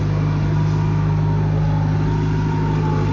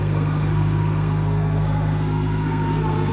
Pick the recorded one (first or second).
first